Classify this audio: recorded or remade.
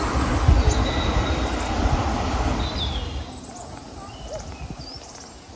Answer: recorded